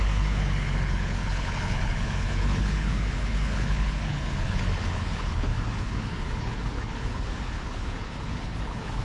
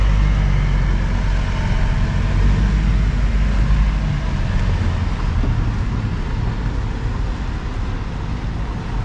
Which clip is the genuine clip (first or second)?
second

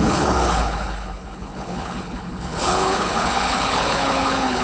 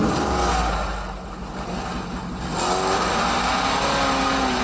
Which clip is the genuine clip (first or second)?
second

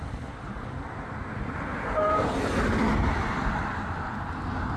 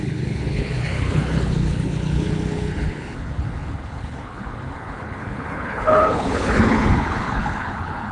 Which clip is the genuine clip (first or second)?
first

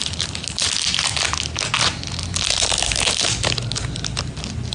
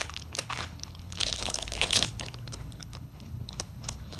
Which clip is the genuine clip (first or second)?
first